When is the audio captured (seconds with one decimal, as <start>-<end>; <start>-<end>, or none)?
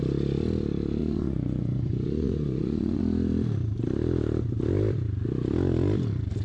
0.0-1.0; 3.0-6.4